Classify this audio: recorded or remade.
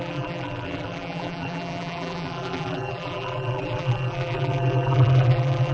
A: remade